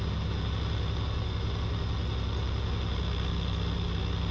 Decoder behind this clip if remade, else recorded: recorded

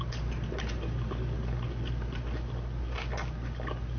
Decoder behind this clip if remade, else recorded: recorded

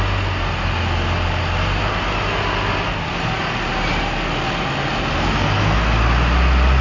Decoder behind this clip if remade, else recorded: recorded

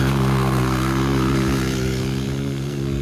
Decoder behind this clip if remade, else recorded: remade, codec, SNAC